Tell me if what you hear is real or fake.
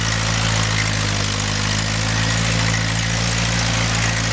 real